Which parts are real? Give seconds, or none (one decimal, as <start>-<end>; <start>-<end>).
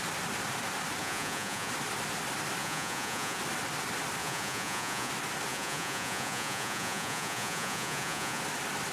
0.0-1.0; 1.7-2.6; 3.4-4.2; 5.1-5.5; 8.4-8.9